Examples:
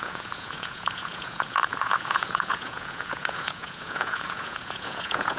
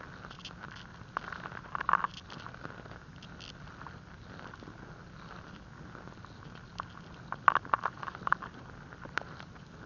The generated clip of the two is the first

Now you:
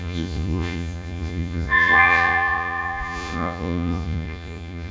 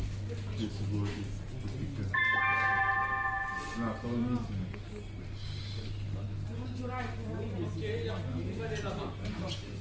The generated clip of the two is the first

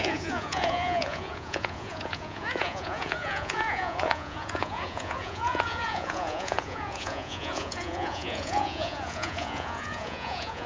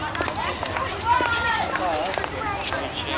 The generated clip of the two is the first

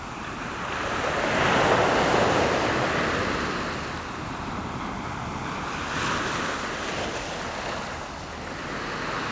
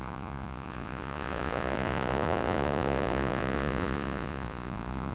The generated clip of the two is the second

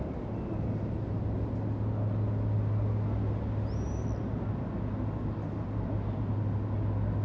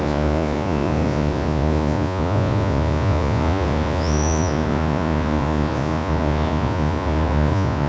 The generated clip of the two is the second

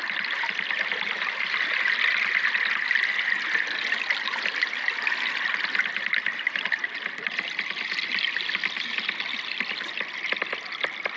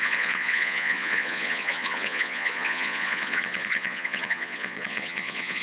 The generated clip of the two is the second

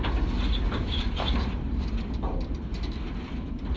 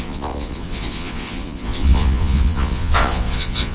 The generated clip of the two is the second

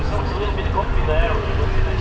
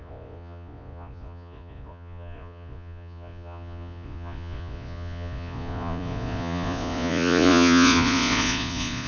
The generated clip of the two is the second